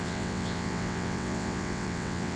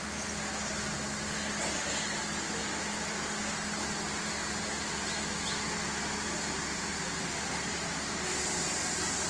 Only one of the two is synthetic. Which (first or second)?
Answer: first